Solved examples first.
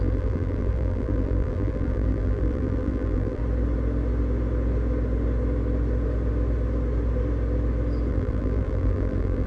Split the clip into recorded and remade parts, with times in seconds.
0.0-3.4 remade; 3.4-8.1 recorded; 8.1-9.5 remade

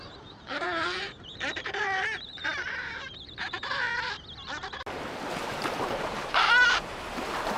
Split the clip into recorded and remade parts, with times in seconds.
0.0-3.9 remade; 3.9-5.3 recorded; 5.3-7.6 remade

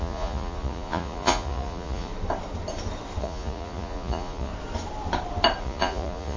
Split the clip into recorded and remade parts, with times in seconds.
0.0-2.1 remade; 2.1-3.2 recorded; 3.2-4.5 remade; 4.5-5.6 recorded; 5.6-6.4 remade